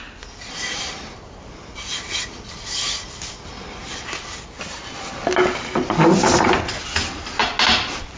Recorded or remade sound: recorded